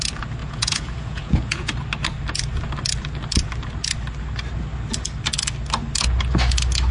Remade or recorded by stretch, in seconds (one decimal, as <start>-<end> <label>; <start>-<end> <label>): 0.0-0.4 recorded; 0.4-1.7 remade; 1.7-6.9 recorded